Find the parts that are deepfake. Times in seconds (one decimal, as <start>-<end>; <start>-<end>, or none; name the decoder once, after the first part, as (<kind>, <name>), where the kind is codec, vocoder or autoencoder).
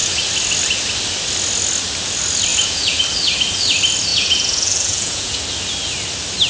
2.5-3.0 (vocoder, Vocos); 4.1-5.4